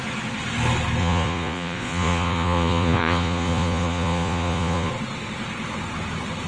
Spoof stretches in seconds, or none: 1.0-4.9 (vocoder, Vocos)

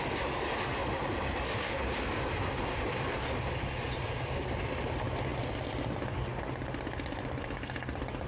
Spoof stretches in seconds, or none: 0.8-4.7 (vocoder, BigVGAN v2)

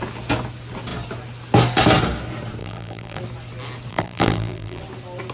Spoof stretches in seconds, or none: 2.6-3.2 (vocoder, BigVGAN v2); 3.9-4.8

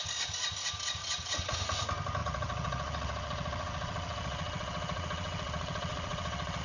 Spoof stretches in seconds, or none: 1.0-1.6 (vocoder, WaveNeXt); 2.2-6.6

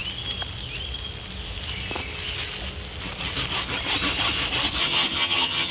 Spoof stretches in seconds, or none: 4.8-5.7 (vocoder, HiFi-GAN)

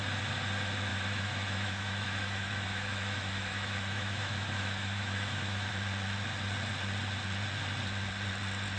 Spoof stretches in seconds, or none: 0.9-5.7 (autoencoder, DAC-VAE)

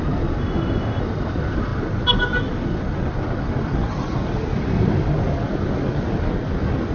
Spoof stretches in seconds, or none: 0.4-1.0 (autoencoder, DAC-VAE)

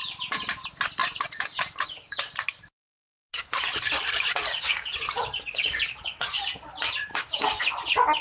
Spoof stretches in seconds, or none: 7.1-7.6 (codec, DAC)